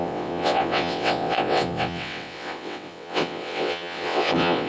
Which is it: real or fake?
fake